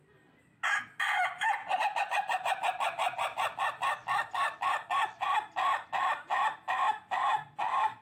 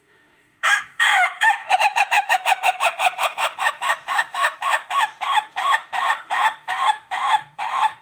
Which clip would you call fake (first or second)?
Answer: second